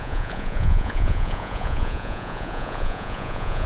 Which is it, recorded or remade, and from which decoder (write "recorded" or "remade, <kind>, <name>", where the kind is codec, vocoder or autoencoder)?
remade, vocoder, Vocos